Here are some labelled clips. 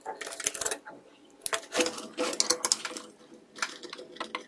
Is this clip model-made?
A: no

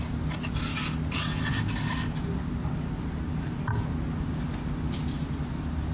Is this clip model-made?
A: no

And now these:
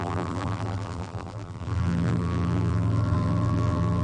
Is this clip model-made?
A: yes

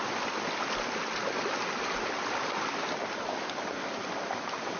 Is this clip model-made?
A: no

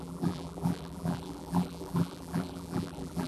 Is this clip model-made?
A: yes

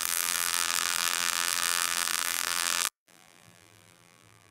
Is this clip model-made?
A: yes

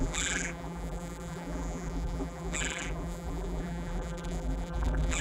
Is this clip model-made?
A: yes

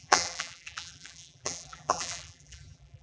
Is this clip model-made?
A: yes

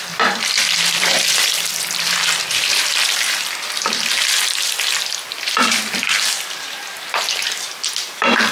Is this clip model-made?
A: yes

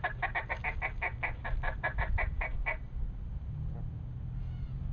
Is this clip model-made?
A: no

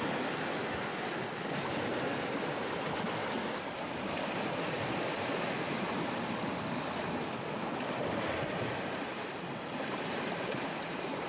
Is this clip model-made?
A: no